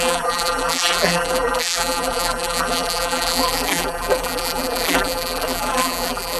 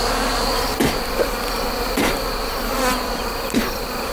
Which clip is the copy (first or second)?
first